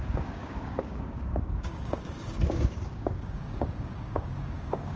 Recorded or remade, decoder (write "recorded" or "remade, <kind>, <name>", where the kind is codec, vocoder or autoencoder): remade, codec, DAC